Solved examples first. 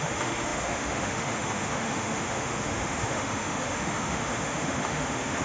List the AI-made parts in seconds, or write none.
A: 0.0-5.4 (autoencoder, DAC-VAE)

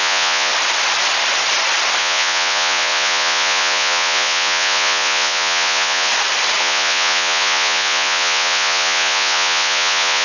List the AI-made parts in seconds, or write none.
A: 0.0-0.5 (vocoder, Vocos); 2.0-6.1; 6.6-10.2

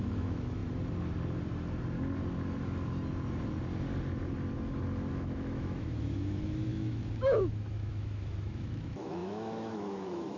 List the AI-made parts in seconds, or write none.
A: 0.0-0.6 (autoencoder, DAC-VAE); 5.1-10.4

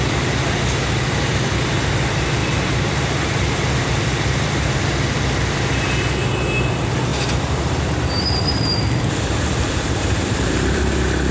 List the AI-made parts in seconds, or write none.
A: 2.4-4.8 (vocoder, BigVGAN v2); 7.1-10.8